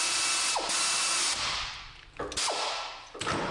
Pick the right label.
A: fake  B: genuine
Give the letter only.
B